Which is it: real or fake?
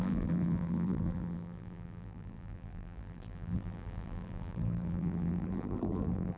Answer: fake